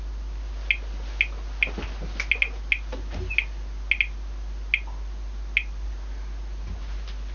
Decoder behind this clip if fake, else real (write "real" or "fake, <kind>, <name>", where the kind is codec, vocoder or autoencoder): real